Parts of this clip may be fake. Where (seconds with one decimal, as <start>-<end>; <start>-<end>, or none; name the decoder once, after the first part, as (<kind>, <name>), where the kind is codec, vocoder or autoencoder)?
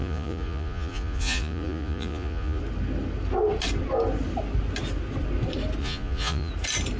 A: 0.0-2.6 (vocoder, Vocos); 5.8-6.5